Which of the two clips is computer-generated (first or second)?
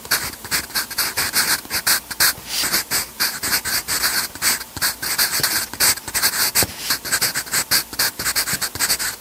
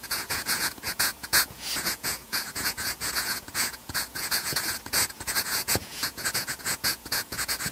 second